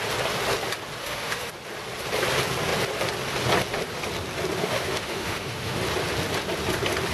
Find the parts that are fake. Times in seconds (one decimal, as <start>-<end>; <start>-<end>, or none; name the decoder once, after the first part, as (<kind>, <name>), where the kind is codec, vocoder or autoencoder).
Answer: 1.0-1.5 (autoencoder, DAC-VAE); 4.6-5.8